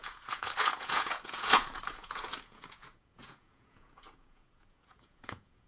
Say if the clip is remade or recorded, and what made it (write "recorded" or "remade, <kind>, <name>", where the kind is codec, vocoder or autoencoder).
remade, vocoder, Vocos